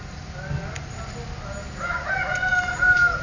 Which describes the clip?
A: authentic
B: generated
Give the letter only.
A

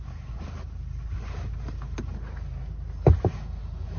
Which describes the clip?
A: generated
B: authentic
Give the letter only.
B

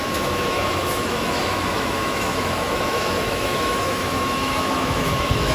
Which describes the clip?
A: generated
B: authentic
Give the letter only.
A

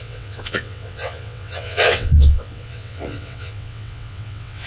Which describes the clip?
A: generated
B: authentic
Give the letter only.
A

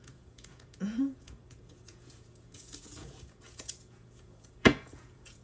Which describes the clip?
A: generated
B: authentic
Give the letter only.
A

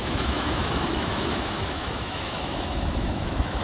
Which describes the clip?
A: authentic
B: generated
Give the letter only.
B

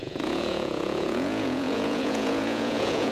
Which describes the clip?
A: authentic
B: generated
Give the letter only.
B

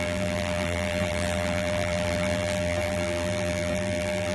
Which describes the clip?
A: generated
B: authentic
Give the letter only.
A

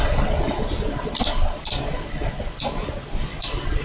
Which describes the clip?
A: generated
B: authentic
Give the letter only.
B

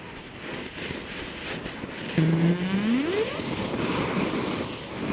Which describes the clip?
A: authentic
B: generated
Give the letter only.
A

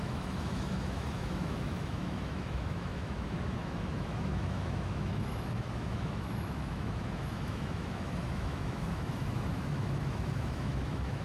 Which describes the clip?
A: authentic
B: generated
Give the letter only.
B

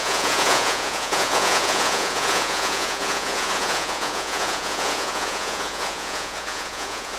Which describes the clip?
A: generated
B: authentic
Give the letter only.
A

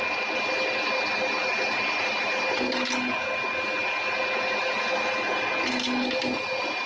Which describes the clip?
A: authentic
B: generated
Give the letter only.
A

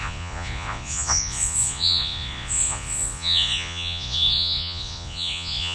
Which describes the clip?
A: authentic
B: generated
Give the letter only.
B